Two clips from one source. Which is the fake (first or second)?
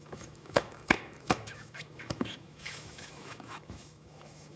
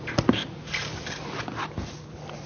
first